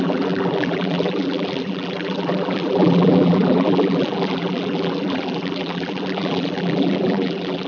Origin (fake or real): fake